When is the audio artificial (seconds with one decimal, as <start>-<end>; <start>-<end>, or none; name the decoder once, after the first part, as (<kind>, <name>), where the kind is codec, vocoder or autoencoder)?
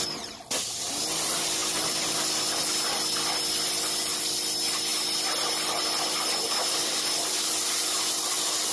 none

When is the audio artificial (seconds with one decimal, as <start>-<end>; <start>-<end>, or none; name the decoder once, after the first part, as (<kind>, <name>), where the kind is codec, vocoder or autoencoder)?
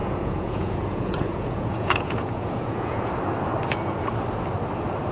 0.0-3.1 (vocoder, Vocos)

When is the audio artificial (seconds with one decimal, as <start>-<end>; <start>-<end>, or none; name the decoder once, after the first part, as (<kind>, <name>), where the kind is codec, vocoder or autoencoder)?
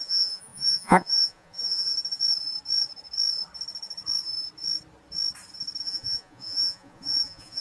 0.0-1.9 (vocoder, Vocos); 5.8-7.6